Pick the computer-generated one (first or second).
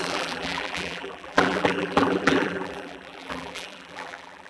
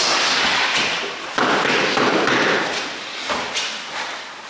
first